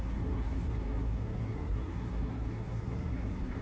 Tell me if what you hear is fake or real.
fake